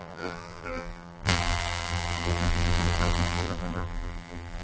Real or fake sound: fake